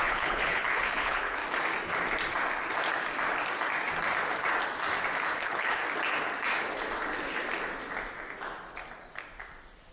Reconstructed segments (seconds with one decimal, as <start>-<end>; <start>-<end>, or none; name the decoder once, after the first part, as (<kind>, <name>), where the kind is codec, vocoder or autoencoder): 0.0-1.4 (codec, HILCodec); 5.3-5.8